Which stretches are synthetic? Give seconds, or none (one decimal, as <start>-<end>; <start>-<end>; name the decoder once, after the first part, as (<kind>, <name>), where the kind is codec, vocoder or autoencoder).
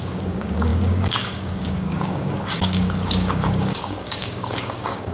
0.0-5.1 (codec, DAC)